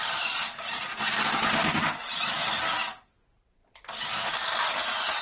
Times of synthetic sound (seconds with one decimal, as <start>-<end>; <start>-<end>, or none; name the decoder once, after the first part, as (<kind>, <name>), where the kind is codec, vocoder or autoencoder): none